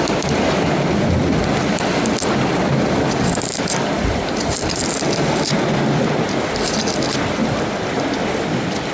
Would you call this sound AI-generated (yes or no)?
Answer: no